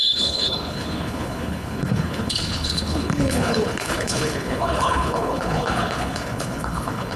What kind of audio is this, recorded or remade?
remade